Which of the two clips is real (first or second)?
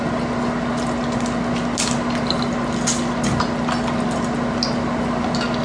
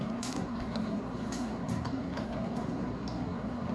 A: first